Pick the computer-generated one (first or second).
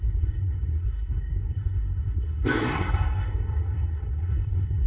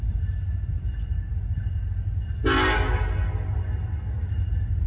first